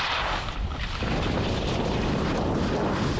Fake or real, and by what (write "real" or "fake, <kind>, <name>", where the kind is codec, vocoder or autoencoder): real